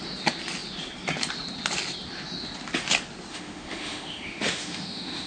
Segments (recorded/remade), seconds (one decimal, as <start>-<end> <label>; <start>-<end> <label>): 0.0-3.3 recorded; 3.3-5.3 remade